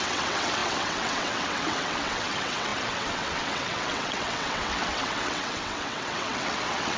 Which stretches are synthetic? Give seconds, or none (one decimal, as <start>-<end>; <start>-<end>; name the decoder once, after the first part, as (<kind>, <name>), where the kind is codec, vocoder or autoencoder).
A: 0.0-7.0 (vocoder, WaveNeXt)